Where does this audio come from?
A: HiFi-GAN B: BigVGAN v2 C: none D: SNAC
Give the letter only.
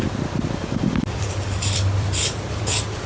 B